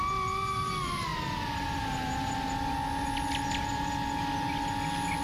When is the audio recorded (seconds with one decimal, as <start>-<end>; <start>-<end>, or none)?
0.0-5.2